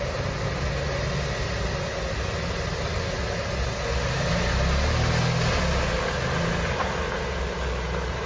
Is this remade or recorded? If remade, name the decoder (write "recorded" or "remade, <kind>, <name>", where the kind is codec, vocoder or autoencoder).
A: recorded